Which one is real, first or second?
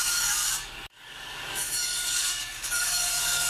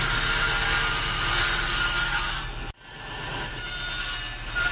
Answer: second